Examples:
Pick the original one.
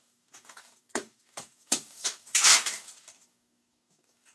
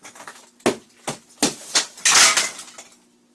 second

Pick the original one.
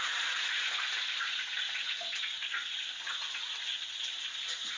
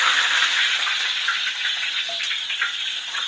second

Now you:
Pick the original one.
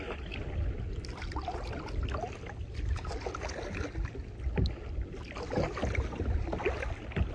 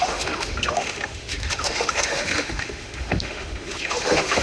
first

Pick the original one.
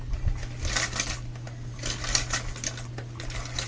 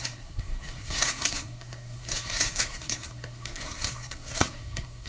first